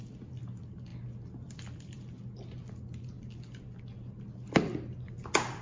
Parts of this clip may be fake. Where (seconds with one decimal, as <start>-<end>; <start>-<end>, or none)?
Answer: none